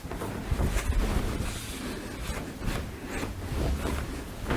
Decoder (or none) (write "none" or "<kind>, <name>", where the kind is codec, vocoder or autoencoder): none